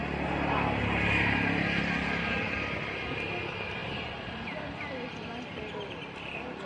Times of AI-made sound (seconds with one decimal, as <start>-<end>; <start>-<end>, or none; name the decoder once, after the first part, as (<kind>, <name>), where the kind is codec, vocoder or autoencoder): none